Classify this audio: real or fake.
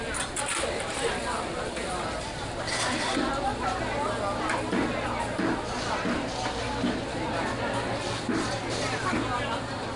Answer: real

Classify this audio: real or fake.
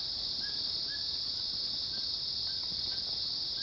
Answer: real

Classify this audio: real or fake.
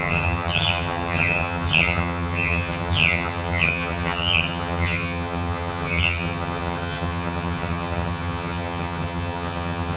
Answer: fake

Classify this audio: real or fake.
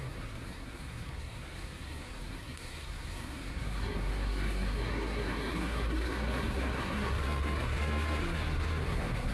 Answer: fake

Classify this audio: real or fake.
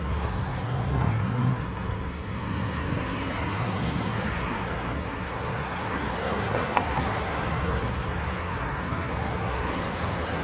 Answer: fake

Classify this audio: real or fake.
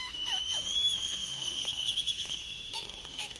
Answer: fake